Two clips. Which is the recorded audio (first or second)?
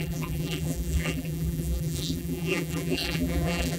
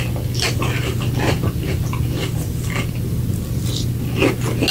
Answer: second